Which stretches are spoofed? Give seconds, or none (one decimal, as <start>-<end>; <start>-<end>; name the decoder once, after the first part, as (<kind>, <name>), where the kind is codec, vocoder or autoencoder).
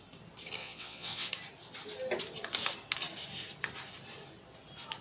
0.6-1.3 (vocoder, WaveNeXt)